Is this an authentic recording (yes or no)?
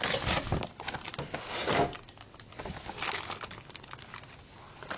yes